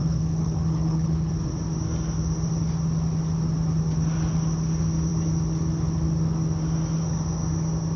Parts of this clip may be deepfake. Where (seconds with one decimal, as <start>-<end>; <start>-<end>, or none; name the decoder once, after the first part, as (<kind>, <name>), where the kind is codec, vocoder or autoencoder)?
0.0-1.3 (codec, HILCodec)